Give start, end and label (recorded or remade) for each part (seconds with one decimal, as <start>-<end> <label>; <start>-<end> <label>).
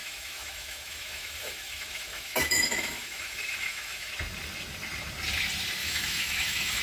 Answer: 0.0-4.1 remade; 4.1-5.8 recorded; 5.8-6.8 remade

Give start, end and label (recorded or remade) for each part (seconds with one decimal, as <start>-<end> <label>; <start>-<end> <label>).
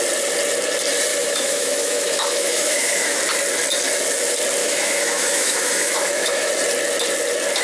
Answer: 0.0-1.1 recorded; 1.1-3.2 remade; 3.2-4.6 recorded; 4.6-6.5 remade; 6.5-7.6 recorded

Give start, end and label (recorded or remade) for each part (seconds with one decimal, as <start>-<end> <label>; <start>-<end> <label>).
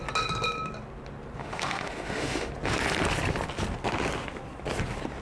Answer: 0.0-1.4 recorded; 1.4-2.5 remade; 2.5-5.2 recorded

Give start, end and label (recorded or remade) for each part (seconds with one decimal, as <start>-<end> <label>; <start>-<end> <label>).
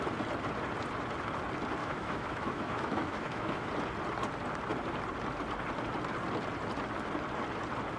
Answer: 0.0-1.8 recorded; 1.8-3.7 remade; 3.7-8.0 recorded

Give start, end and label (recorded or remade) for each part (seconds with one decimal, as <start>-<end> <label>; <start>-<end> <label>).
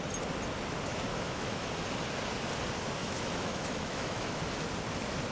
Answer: 0.0-1.1 recorded; 1.1-1.7 remade; 1.7-3.0 recorded; 3.0-4.4 remade; 4.4-5.3 recorded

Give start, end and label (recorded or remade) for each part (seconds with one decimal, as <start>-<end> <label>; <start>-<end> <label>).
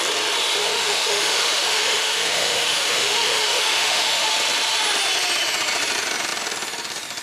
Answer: 0.0-0.6 recorded; 0.6-4.3 remade; 4.3-7.2 recorded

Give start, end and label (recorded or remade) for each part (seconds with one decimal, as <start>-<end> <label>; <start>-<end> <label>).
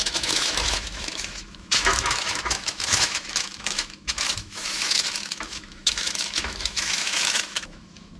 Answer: 0.0-8.2 remade